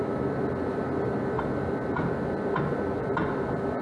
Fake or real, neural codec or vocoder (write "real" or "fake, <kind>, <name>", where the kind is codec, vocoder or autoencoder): real